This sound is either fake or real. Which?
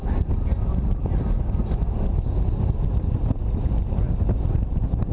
real